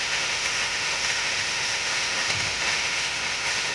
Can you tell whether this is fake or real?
fake